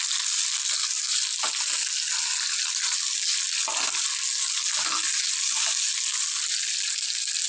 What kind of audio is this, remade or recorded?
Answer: recorded